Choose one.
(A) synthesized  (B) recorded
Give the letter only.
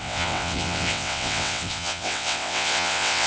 A